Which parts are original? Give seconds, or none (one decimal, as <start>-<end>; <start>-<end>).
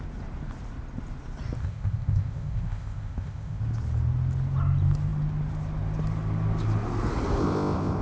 0.0-1.6; 3.6-7.4